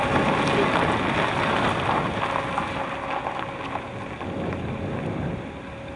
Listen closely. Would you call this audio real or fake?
real